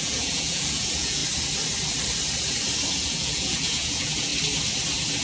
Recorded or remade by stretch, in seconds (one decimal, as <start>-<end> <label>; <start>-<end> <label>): 0.0-1.2 remade; 1.2-2.9 recorded; 2.9-4.3 remade; 4.3-5.2 recorded